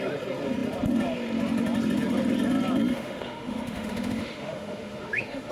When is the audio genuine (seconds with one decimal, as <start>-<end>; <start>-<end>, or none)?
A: 0.0-2.9